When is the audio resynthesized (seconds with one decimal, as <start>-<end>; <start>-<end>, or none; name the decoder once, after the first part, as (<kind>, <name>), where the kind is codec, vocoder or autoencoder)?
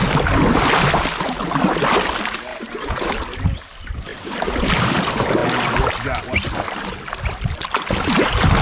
2.5-3.1 (vocoder, BigVGAN v2); 4.1-5.0